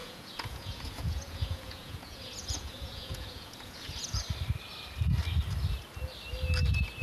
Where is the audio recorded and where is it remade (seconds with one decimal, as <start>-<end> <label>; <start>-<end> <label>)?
0.0-4.2 remade; 4.2-7.0 recorded